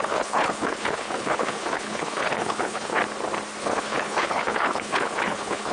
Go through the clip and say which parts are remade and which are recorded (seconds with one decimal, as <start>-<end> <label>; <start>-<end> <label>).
0.0-3.0 remade; 3.0-3.6 recorded; 3.6-5.7 remade